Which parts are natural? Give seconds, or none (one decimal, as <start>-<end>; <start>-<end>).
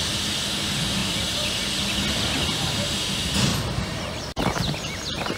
0.0-3.5; 4.1-5.4